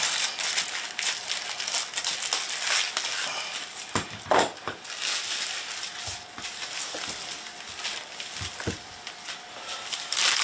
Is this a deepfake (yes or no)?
no